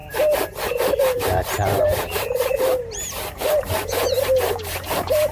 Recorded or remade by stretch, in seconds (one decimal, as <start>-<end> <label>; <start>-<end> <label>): 0.0-1.0 recorded; 1.0-5.3 remade